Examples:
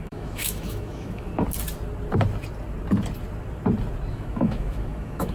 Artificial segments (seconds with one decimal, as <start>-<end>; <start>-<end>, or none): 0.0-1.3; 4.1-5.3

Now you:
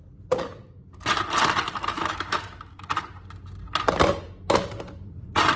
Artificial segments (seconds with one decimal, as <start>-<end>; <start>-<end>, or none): 1.9-2.9

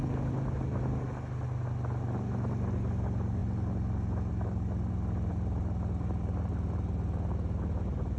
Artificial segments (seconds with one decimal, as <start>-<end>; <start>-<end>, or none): none

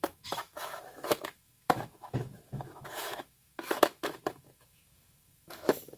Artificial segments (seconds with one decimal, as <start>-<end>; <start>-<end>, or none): 0.0-6.0

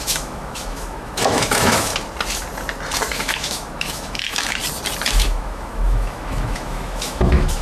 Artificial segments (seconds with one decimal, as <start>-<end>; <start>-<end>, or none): 0.0-1.9; 3.1-4.6; 5.1-7.6

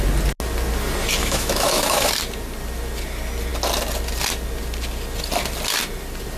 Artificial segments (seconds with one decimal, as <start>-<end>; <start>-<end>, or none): 1.2-2.1